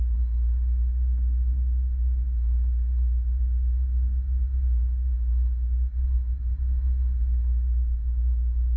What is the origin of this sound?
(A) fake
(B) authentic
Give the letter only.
B